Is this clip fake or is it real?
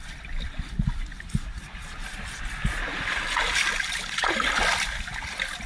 real